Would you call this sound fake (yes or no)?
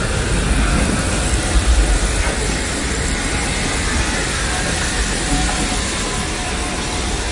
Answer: no